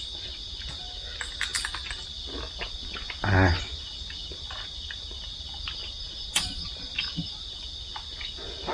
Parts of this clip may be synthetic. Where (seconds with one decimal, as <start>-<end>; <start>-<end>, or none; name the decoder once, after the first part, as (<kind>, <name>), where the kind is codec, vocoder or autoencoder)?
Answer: none